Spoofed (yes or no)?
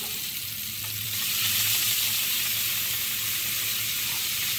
yes